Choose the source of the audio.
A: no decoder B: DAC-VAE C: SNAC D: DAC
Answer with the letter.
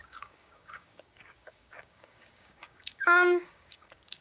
D